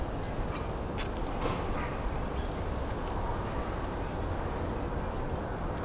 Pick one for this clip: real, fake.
real